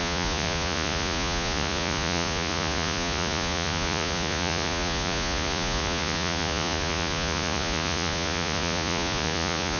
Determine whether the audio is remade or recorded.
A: remade